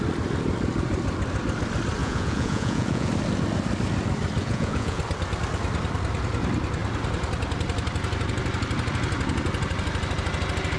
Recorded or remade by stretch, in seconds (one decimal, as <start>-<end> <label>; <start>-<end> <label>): 0.0-2.0 recorded; 2.0-3.1 remade; 3.1-4.4 recorded; 4.4-5.0 remade; 5.0-10.8 recorded